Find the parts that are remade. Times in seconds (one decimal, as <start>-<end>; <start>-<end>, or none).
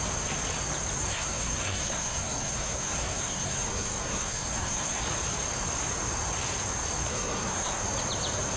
1.1-5.0; 7.1-7.8